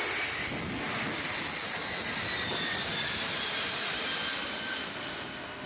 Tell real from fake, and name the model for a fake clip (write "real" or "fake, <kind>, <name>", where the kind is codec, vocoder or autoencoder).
real